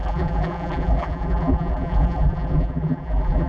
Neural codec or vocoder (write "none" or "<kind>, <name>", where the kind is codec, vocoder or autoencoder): vocoder, BigVGAN v2